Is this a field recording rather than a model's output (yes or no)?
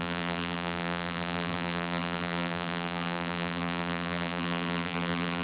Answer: no